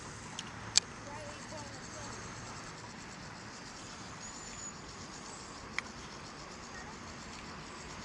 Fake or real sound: real